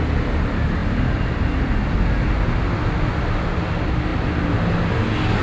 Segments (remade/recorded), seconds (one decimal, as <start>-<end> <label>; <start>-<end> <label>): 0.0-5.4 recorded